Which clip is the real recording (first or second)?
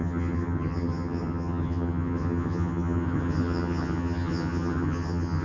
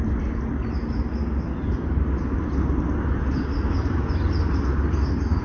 second